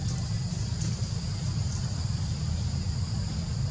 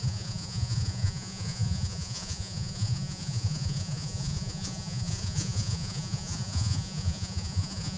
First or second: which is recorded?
first